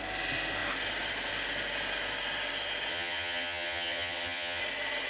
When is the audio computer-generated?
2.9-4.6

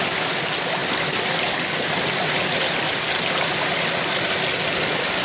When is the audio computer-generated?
none

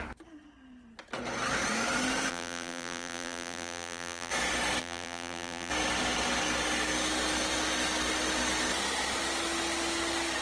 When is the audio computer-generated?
2.3-4.3; 4.8-5.7

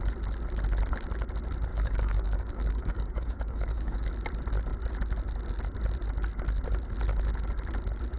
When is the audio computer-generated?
1.7-4.1